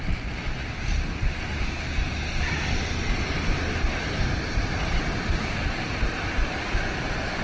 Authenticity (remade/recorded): recorded